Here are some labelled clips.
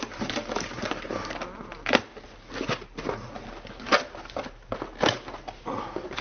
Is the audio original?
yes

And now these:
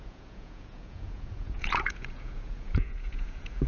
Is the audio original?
no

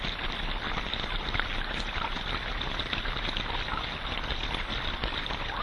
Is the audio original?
yes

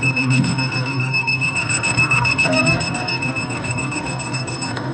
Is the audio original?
no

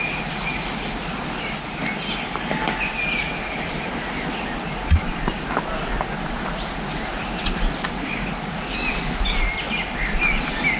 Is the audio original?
yes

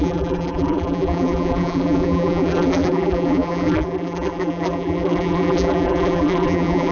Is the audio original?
no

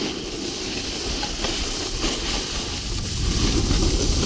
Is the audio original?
yes